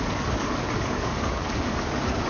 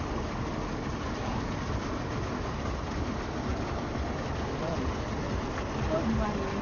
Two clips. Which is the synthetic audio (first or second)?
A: first